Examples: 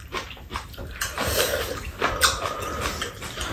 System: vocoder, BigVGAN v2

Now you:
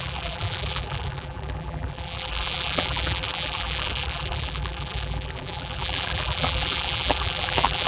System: vocoder, BigVGAN v2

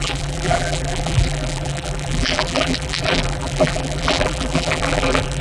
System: vocoder, BigVGAN v2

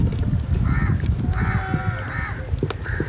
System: none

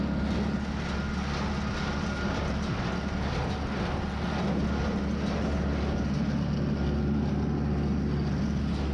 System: none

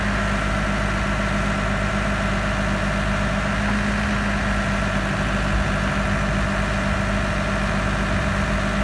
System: none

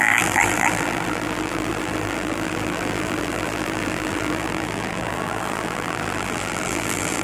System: vocoder, BigVGAN v2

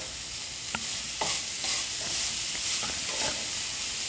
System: none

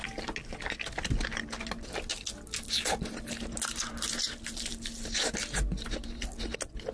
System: none